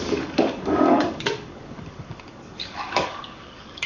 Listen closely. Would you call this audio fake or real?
fake